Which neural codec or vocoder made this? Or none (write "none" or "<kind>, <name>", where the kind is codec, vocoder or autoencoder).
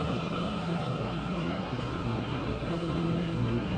codec, SNAC